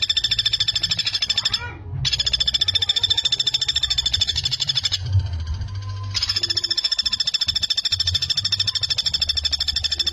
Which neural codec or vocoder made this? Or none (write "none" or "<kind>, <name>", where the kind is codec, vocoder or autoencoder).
none